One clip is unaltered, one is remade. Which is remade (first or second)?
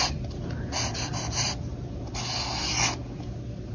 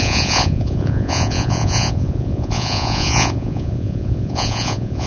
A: second